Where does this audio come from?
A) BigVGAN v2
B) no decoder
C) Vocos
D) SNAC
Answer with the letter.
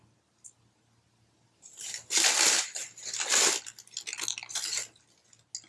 B